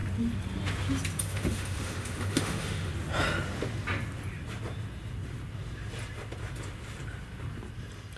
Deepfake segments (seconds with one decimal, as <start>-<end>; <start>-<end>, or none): 1.2-2.9